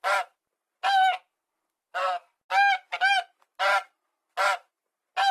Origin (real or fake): real